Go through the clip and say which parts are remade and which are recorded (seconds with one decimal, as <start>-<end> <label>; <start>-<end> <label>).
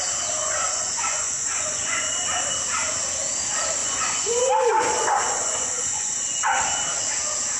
0.0-0.4 recorded; 0.4-2.0 remade; 2.0-3.8 recorded; 3.8-6.2 remade; 6.2-7.6 recorded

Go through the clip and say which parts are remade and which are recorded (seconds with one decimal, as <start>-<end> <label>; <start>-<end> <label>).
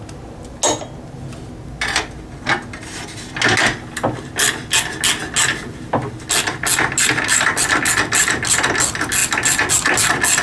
0.0-10.4 recorded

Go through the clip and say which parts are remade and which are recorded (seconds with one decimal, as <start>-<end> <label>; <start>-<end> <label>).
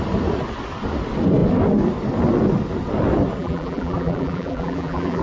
0.0-3.4 recorded; 3.4-5.2 remade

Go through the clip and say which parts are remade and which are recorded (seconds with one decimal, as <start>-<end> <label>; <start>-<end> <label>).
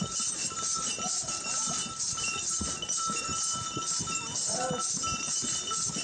0.0-6.0 recorded